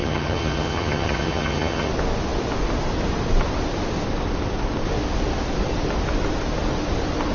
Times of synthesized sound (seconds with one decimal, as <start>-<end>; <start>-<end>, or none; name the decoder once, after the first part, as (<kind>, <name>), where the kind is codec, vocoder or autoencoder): 0.0-1.9 (vocoder, HiFi-GAN)